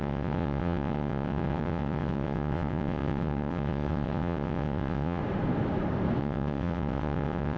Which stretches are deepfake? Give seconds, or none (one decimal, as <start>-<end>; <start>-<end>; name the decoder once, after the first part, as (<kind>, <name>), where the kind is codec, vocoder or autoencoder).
0.0-5.2 (vocoder, WaveNeXt); 6.2-7.6